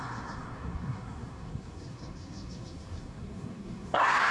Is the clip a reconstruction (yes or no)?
yes